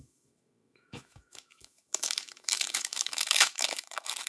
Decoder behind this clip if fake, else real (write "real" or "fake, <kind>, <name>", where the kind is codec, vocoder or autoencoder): fake, autoencoder, DAC-VAE